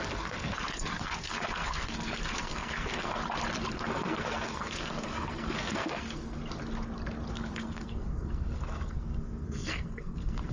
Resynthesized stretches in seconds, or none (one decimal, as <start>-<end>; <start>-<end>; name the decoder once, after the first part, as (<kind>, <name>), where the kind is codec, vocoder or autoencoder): 0.0-3.2 (codec, SNAC); 3.7-6.4; 7.3-10.5